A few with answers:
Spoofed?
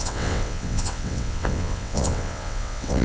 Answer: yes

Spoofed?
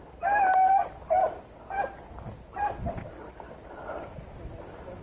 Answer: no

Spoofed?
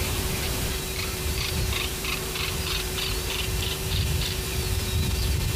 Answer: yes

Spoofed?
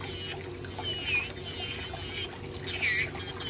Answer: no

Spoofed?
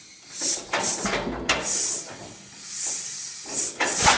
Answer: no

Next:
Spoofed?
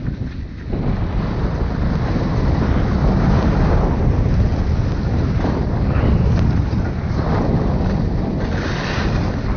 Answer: no